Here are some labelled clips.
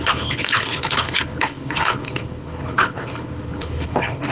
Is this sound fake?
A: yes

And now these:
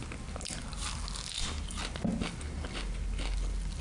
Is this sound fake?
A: no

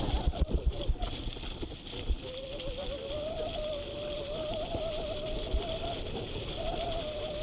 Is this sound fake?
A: no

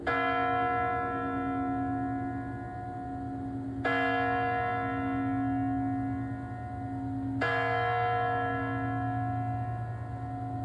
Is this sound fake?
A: no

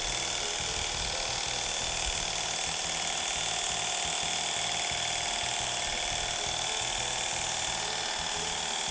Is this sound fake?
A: no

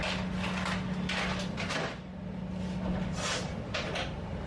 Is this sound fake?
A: no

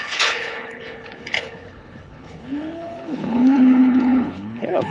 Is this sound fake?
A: yes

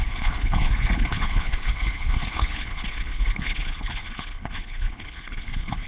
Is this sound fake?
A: yes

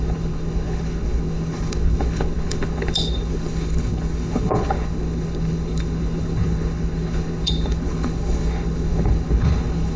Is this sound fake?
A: yes